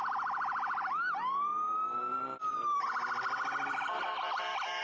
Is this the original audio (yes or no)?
no